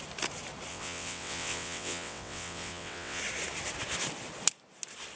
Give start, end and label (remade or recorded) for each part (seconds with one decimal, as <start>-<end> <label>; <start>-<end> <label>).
0.0-0.7 recorded; 0.7-3.2 remade; 3.2-5.2 recorded